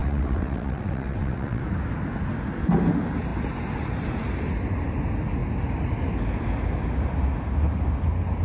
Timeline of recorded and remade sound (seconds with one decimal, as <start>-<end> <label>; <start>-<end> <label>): 0.0-1.6 remade; 1.6-8.4 recorded